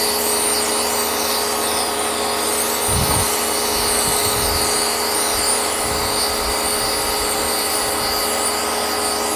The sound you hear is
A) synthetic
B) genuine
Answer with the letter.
B